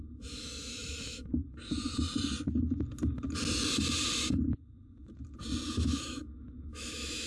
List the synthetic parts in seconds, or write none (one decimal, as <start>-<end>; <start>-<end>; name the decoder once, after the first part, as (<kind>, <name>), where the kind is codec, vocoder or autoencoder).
0.0-1.3 (autoencoder, DAC-VAE); 5.7-7.3